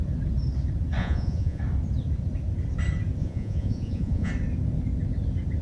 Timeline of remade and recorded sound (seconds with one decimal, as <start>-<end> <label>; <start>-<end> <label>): 0.0-1.0 recorded; 1.0-1.6 remade; 1.6-3.2 recorded; 3.2-4.3 remade; 4.3-5.6 recorded